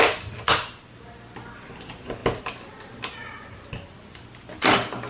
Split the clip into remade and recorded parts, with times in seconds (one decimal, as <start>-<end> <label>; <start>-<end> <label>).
0.0-5.1 recorded